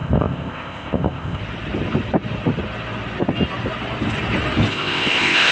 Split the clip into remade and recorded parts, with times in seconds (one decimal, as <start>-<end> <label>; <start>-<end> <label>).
0.0-1.4 remade; 1.4-4.7 recorded; 4.7-5.5 remade